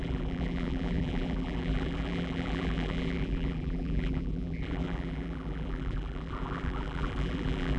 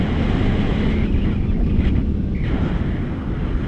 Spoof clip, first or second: first